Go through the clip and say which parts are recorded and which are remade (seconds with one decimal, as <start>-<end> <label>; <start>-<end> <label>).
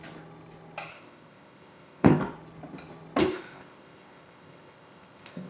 0.0-0.9 recorded; 0.9-2.2 remade; 2.2-3.3 recorded; 3.3-5.5 remade